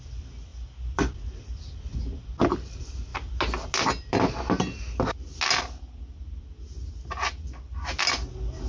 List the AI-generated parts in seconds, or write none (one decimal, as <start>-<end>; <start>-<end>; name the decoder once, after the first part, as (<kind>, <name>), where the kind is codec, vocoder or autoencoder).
none